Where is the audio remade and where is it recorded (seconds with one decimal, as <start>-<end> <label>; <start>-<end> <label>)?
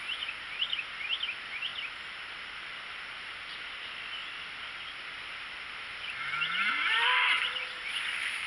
0.0-8.5 recorded